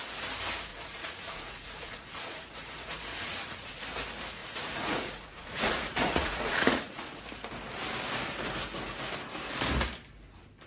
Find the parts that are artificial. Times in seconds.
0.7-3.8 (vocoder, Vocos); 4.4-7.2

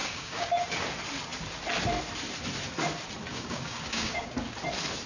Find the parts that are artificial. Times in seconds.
0.0-0.5 (codec, DAC); 3.3-4.3

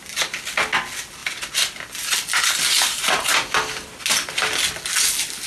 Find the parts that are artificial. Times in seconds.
none